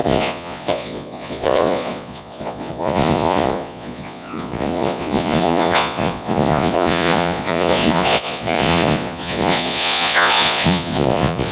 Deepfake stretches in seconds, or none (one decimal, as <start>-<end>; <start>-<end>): 0.0-11.5